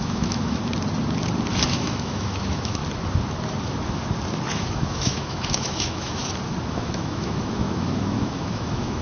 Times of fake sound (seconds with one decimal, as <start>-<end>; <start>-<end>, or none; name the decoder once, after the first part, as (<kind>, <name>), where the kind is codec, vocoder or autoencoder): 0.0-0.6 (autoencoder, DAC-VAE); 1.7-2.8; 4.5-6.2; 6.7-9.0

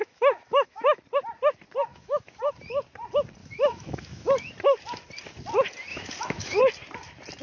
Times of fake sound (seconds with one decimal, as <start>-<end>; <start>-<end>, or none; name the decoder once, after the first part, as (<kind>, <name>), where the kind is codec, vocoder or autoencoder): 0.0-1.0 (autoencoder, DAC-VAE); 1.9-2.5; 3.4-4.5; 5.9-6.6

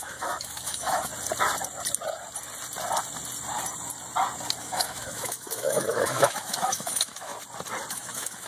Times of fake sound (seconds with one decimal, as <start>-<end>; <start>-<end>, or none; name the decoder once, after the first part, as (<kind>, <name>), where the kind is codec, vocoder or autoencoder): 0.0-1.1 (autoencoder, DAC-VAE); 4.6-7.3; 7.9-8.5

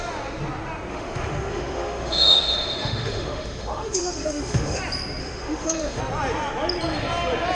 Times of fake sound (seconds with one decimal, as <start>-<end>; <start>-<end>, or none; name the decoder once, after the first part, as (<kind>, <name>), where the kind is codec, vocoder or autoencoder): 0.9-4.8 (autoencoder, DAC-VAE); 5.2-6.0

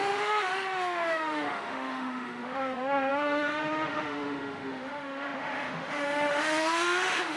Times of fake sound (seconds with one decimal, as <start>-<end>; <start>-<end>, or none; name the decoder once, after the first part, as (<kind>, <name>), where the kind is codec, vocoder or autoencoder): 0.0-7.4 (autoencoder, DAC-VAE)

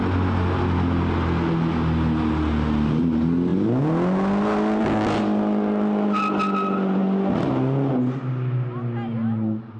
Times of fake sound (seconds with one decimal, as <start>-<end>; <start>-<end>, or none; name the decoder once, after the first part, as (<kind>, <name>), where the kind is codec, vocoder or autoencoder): none

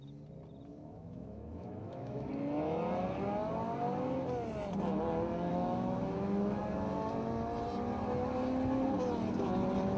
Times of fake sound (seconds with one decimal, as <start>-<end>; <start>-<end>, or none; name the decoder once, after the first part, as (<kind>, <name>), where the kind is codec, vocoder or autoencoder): 0.7-2.3 (autoencoder, DAC-VAE); 5.5-6.6